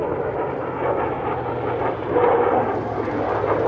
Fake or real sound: real